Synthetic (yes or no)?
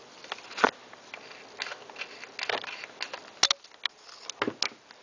no